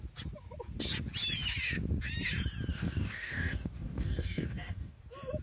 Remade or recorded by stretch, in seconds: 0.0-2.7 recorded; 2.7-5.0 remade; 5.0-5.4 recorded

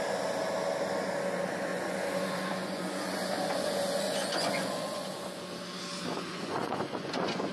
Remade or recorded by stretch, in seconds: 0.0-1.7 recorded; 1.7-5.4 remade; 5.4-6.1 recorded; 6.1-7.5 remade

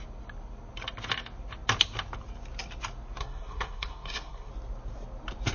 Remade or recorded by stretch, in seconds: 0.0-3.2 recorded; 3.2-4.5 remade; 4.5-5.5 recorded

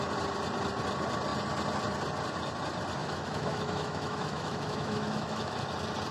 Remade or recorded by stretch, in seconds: 0.0-3.0 recorded; 3.0-5.6 remade; 5.6-6.1 recorded